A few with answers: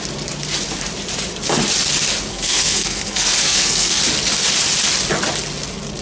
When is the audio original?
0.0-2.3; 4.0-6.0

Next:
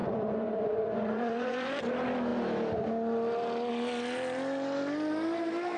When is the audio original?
1.8-5.8

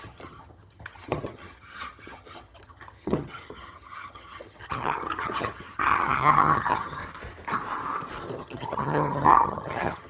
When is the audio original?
7.0-8.4

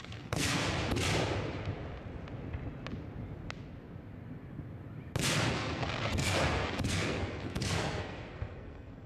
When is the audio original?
0.6-5.5

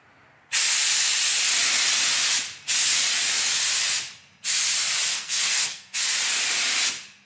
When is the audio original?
0.0-5.1; 6.0-7.3

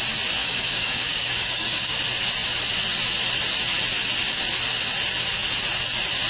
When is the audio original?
0.0-0.4; 2.0-6.3

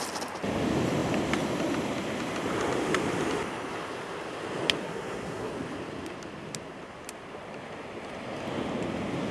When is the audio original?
0.0-4.8; 5.5-9.3